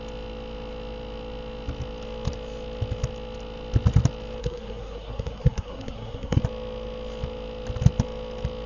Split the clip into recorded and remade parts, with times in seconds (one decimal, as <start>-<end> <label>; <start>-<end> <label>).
0.0-4.4 recorded; 4.4-6.4 remade; 6.4-8.7 recorded